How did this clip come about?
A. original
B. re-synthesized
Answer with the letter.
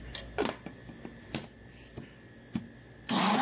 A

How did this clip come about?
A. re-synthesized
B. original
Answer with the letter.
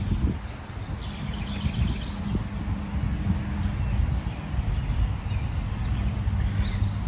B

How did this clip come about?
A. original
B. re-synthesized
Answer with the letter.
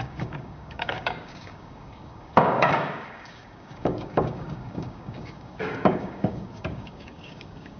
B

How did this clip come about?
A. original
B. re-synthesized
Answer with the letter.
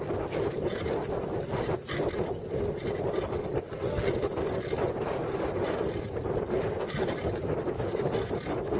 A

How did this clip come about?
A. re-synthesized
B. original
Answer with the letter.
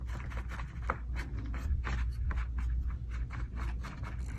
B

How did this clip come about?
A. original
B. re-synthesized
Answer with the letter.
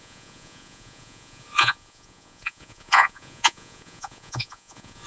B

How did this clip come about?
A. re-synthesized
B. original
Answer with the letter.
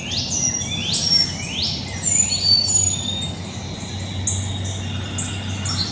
B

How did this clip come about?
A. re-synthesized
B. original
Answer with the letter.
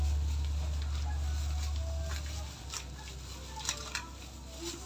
B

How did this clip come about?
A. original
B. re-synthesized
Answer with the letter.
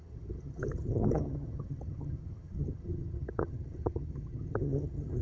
B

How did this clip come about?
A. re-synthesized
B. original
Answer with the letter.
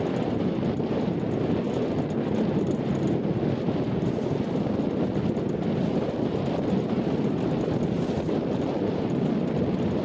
A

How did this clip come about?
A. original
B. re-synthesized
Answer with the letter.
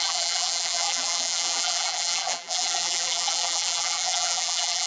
B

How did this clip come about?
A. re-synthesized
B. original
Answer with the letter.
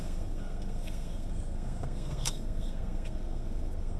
A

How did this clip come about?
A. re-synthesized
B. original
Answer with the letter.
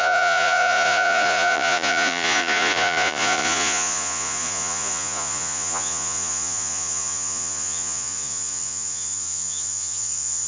A